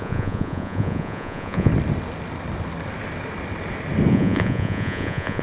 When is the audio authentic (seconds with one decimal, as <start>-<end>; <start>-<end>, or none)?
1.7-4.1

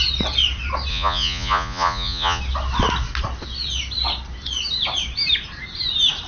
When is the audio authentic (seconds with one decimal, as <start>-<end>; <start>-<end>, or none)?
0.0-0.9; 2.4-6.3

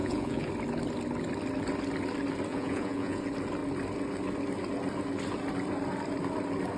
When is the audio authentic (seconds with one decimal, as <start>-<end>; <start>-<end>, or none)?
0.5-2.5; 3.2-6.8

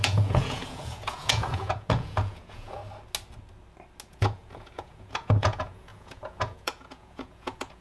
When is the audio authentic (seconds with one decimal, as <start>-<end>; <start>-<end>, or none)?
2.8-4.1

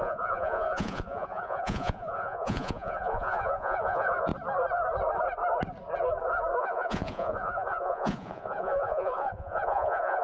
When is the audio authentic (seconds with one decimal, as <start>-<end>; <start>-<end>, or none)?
4.3-6.6